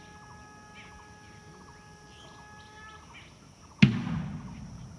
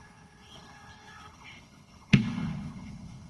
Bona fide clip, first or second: first